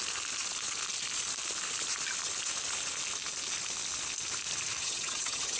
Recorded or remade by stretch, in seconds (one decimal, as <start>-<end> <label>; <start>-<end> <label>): 0.0-4.8 recorded; 4.8-5.6 remade